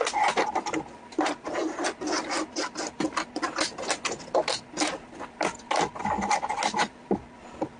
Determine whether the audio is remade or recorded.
recorded